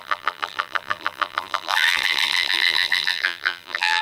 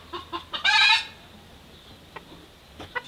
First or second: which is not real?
first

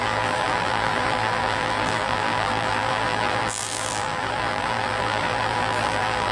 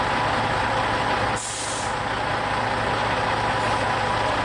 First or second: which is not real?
first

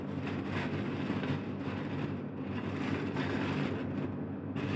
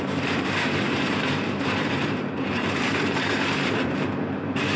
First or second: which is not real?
second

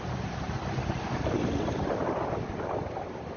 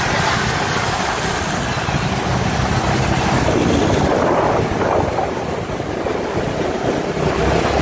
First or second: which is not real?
first